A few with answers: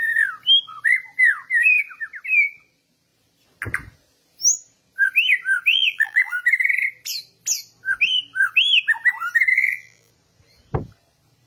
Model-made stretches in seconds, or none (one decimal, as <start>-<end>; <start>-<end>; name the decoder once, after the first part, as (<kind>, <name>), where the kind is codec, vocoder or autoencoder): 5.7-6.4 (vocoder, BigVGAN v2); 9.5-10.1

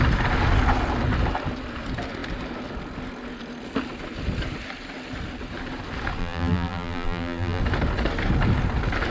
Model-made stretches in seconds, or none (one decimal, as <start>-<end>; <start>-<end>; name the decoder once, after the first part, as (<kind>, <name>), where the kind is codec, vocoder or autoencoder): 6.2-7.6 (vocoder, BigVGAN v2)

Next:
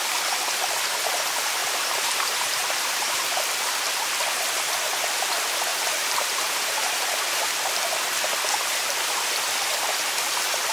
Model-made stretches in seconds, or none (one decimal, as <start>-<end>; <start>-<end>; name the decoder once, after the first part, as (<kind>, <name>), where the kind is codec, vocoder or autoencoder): 1.6-3.4 (vocoder, BigVGAN v2); 5.7-7.2